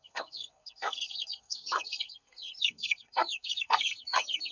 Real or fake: fake